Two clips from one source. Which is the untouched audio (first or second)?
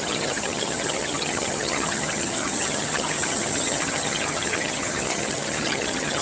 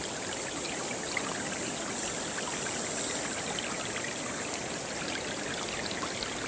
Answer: second